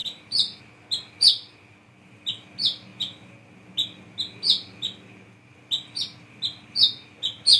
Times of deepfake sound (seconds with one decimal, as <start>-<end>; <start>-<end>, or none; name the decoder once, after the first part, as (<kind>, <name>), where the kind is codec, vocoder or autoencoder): 0.0-0.6 (vocoder, BigVGAN v2)